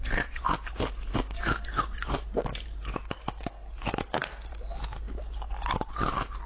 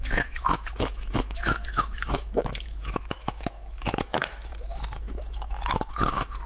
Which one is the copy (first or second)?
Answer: second